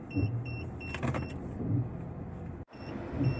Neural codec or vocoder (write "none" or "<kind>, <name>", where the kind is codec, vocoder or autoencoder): none